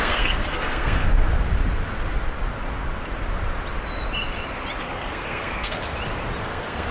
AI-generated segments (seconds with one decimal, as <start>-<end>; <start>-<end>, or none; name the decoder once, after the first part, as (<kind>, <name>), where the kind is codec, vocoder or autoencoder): 0.0-1.0 (codec, SNAC); 4.8-5.8; 6.4-6.9